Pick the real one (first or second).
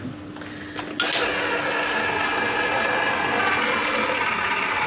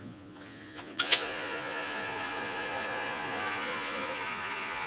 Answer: first